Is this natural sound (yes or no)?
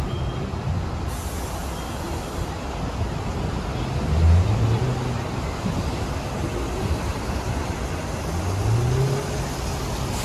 yes